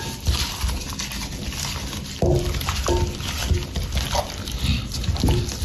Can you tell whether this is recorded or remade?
recorded